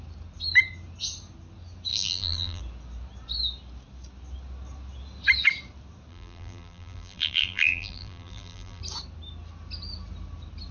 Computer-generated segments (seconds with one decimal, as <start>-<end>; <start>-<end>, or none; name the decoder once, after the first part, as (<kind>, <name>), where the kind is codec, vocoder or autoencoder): 1.9-2.6 (vocoder, BigVGAN v2); 6.1-8.8